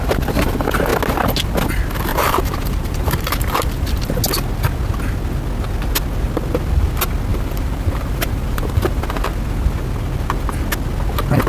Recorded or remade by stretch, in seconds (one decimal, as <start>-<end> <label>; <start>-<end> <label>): 0.0-2.1 recorded; 2.1-4.1 remade; 4.1-7.3 recorded; 7.3-9.1 remade; 9.1-11.5 recorded